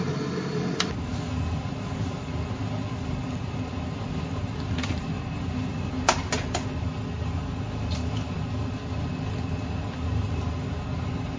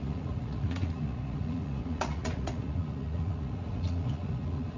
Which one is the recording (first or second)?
first